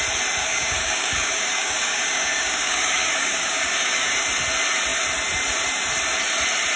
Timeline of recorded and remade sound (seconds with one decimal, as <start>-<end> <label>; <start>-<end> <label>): 0.0-0.4 recorded; 0.4-4.1 remade; 4.1-6.8 recorded